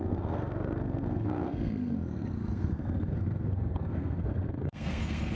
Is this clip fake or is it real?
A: fake